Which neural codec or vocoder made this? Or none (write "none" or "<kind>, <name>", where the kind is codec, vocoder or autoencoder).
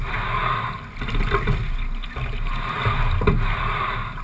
none